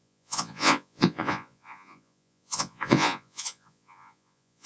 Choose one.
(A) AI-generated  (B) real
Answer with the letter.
A